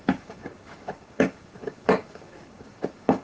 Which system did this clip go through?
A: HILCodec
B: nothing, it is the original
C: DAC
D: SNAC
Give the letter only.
C